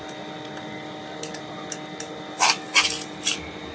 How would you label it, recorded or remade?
recorded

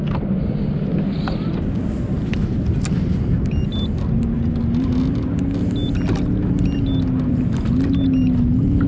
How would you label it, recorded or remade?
recorded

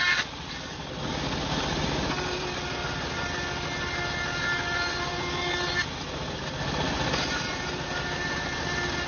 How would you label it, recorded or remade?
recorded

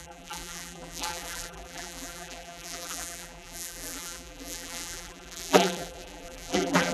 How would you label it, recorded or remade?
remade